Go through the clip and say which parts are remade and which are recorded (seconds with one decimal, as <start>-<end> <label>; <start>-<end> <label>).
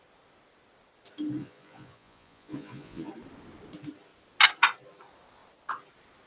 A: 0.0-1.4 recorded; 1.4-3.1 remade; 3.1-6.3 recorded